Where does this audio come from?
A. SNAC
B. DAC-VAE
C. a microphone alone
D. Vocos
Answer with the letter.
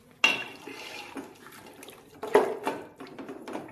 C